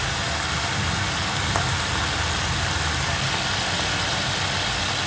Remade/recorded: recorded